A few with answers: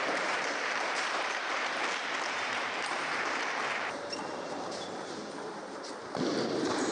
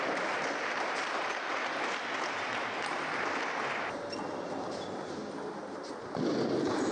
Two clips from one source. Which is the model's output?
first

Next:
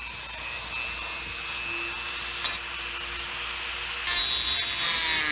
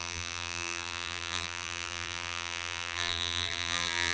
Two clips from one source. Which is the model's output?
second